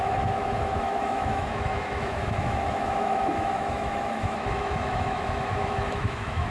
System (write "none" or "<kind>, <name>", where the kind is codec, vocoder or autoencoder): autoencoder, DAC-VAE